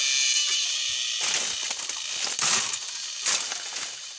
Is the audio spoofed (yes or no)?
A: no